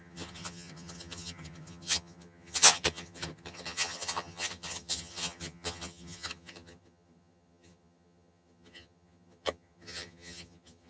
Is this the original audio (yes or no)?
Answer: no